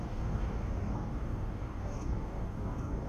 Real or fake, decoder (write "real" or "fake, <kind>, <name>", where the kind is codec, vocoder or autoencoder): fake, codec, DAC